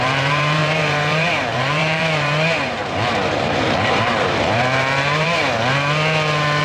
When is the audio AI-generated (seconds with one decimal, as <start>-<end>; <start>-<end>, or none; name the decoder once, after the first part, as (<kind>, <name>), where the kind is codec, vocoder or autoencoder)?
0.0-5.4 (vocoder, BigVGAN v2)